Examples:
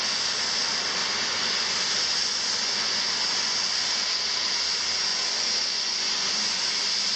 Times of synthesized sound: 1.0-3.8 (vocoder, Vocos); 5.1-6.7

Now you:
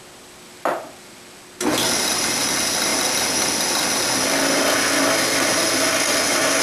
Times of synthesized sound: none

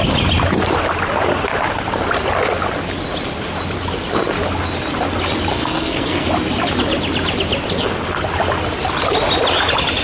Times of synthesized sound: 5.5-6.3 (codec, SNAC)